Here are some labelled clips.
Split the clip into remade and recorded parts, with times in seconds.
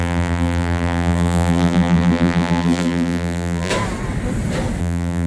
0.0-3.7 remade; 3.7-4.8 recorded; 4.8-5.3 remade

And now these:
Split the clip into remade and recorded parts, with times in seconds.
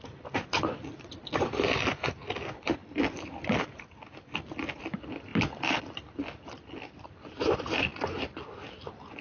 0.0-9.2 recorded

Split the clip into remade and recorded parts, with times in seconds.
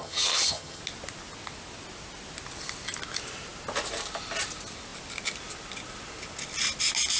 0.0-0.8 remade; 0.8-7.2 recorded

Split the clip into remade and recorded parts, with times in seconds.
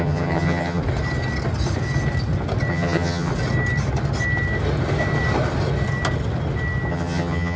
0.0-0.8 remade; 0.8-2.7 recorded; 2.7-3.3 remade; 3.3-6.9 recorded; 6.9-7.6 remade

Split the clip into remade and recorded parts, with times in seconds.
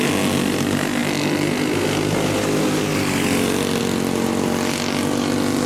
0.0-5.7 recorded